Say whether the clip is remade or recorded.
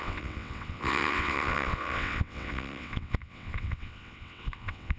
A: remade